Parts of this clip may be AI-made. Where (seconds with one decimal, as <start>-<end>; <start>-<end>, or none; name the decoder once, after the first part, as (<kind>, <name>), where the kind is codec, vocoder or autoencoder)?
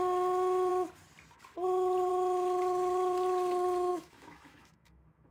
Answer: 3.9-5.3 (autoencoder, DAC-VAE)